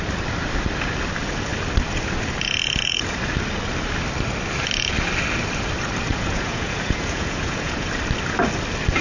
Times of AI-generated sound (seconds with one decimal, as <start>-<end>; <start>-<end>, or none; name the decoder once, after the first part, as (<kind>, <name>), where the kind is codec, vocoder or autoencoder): 6.1-7.9 (vocoder, Vocos)